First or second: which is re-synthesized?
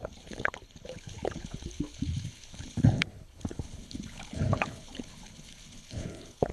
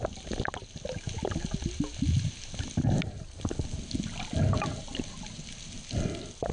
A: first